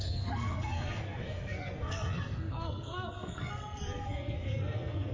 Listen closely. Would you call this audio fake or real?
fake